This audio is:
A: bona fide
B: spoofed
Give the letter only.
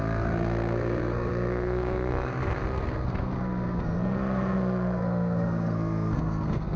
B